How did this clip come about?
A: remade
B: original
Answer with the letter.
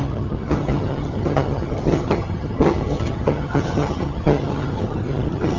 A